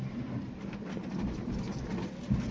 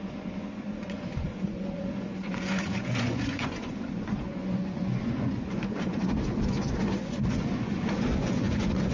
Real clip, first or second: first